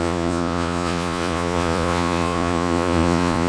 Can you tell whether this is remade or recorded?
remade